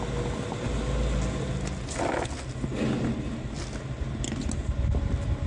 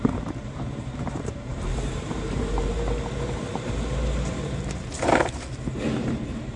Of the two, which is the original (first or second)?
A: first